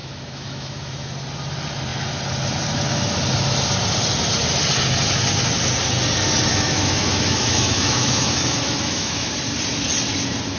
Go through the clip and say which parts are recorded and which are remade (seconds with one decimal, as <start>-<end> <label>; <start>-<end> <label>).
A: 0.0-1.1 remade; 1.1-6.5 recorded; 6.5-9.3 remade; 9.3-10.6 recorded